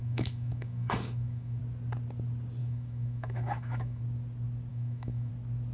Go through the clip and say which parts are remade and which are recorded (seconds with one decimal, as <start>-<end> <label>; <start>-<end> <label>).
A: 0.0-1.6 remade; 1.6-2.6 recorded; 2.6-4.0 remade; 4.0-4.7 recorded; 4.7-5.3 remade; 5.3-5.7 recorded